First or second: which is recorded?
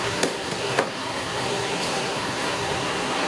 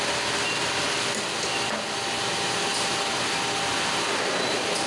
second